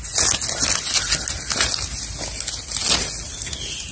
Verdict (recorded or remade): recorded